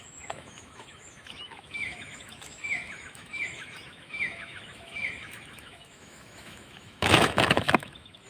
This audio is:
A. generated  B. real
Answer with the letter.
A